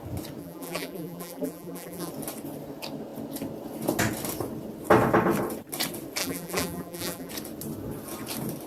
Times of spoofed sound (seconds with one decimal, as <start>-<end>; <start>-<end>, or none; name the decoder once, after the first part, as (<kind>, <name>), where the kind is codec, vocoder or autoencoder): 0.4-2.1 (vocoder, BigVGAN v2); 6.2-7.3